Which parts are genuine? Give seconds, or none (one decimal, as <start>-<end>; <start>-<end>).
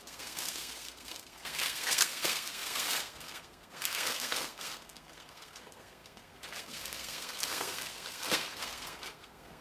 none